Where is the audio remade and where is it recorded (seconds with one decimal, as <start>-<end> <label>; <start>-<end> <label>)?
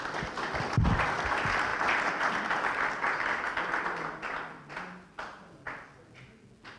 0.0-6.8 recorded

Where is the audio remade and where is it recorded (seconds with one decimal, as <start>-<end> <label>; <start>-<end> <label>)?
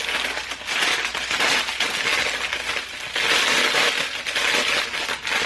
0.0-1.1 recorded; 1.1-4.4 remade; 4.4-5.5 recorded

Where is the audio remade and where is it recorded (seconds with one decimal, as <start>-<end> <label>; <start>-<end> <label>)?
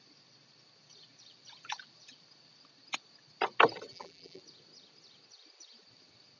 0.0-3.9 recorded; 3.9-4.4 remade; 4.4-6.4 recorded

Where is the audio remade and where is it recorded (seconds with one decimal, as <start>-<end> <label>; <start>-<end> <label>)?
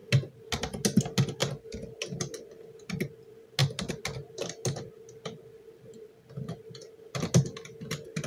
0.0-8.3 recorded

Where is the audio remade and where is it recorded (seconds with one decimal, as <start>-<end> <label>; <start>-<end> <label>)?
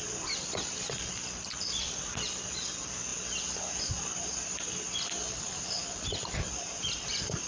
0.0-1.4 recorded; 1.4-2.0 remade; 2.0-5.8 recorded; 5.8-7.1 remade; 7.1-7.5 recorded